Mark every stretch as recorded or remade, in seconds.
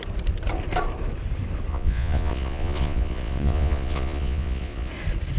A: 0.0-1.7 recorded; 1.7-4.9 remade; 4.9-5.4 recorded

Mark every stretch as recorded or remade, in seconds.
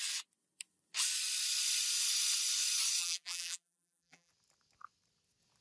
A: 0.0-3.0 recorded; 3.0-4.3 remade; 4.3-5.6 recorded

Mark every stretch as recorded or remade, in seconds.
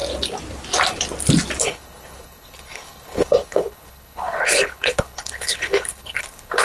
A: 0.0-1.6 recorded; 1.6-6.6 remade